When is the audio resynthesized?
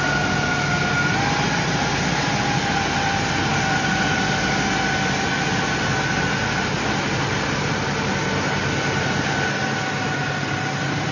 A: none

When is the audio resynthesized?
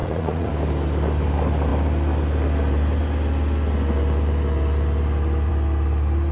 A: 0.0-0.5 (vocoder, Vocos)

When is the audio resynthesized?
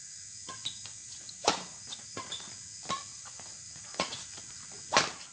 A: 1.0-2.5 (vocoder, Vocos); 3.1-4.3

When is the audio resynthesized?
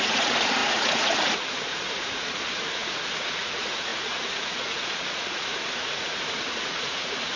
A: 0.0-7.4 (vocoder, Vocos)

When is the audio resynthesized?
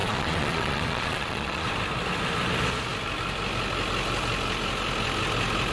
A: 0.0-1.7 (vocoder, Vocos)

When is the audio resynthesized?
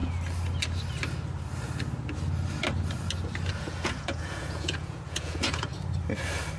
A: 3.5-5.7 (vocoder, Vocos)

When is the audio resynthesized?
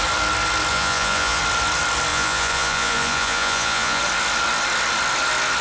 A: 0.7-1.4 (vocoder, Vocos); 2.1-4.0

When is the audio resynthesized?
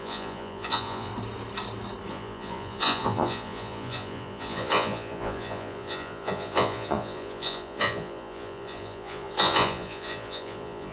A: 0.0-1.1 (vocoder, Vocos); 2.1-10.9